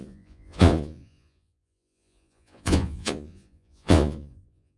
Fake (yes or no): yes